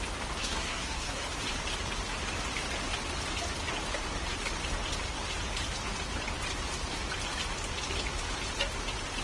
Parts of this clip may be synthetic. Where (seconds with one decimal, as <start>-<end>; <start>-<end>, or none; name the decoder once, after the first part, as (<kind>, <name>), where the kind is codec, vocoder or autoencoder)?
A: 0.4-1.2 (codec, SNAC)